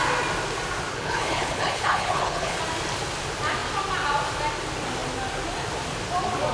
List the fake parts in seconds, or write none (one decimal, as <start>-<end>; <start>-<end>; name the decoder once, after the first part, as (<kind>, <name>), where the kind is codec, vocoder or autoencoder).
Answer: 0.9-2.6 (codec, HILCodec)